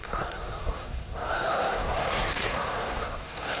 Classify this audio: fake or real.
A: fake